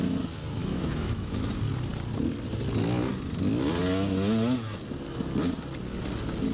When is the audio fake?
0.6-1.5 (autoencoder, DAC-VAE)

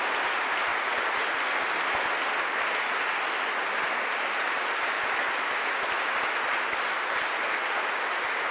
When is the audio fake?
0.7-1.4 (vocoder, Vocos)

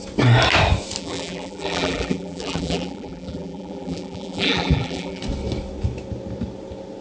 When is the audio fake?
1.0-5.2 (vocoder, BigVGAN v2)

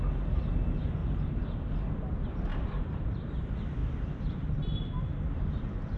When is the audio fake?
2.5-3.4 (vocoder, BigVGAN v2)